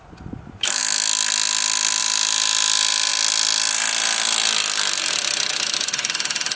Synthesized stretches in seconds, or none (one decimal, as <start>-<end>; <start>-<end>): 0.0-0.8; 2.0-3.1; 5.5-6.6